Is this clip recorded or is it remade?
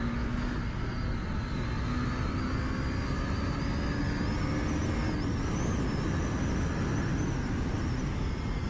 recorded